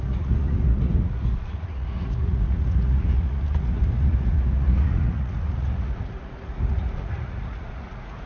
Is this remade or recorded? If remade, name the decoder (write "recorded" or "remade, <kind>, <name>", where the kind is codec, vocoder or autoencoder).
remade, vocoder, Vocos